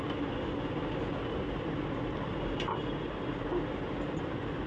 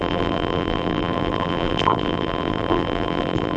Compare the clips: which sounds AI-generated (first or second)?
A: second